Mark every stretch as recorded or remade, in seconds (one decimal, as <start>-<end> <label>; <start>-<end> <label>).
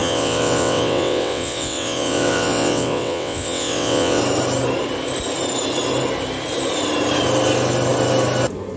0.0-4.2 remade; 4.2-8.8 recorded